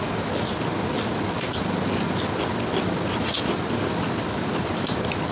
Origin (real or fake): real